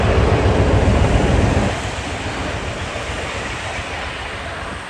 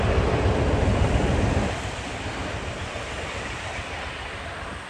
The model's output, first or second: second